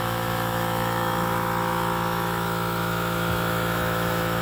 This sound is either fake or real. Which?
fake